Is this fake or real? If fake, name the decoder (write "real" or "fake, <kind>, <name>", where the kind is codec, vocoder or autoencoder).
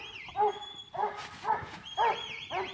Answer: real